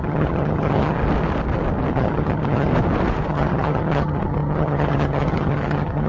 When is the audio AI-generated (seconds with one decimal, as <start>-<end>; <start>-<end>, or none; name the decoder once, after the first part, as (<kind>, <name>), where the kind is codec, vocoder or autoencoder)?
0.0-1.0 (vocoder, HiFi-GAN); 1.9-2.7; 3.3-6.1